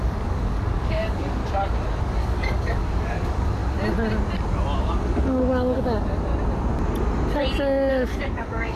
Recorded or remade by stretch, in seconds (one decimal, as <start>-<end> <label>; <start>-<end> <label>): 0.0-1.4 remade; 1.4-2.0 recorded; 2.0-3.6 remade; 3.6-4.8 recorded; 4.8-6.3 remade; 6.3-7.9 recorded; 7.9-8.8 remade